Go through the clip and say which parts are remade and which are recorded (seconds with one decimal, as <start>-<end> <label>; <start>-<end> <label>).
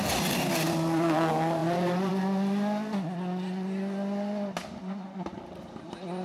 0.0-6.2 recorded